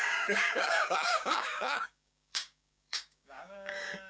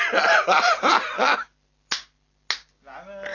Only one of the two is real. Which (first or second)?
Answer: second